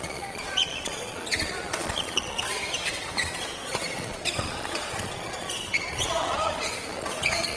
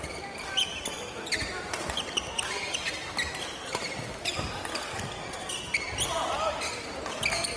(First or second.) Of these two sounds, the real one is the second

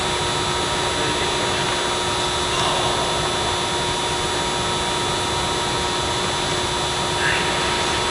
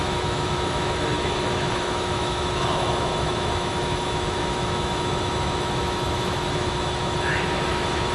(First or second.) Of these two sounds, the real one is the first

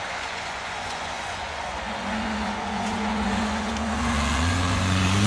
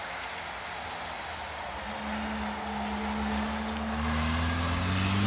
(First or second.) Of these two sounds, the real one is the second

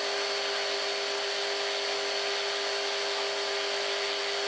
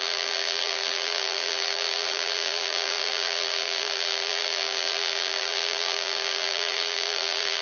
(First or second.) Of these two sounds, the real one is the first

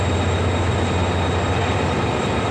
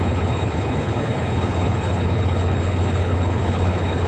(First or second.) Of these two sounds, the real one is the first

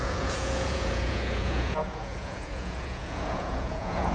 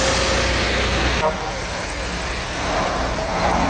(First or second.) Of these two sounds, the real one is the second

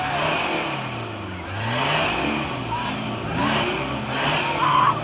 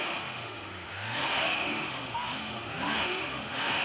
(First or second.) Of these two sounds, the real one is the first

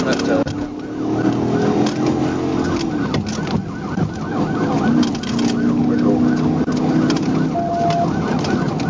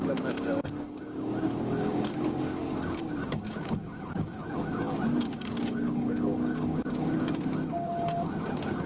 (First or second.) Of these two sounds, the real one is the first